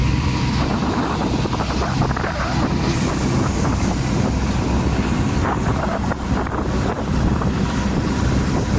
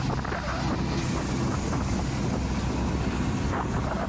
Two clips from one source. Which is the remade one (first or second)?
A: first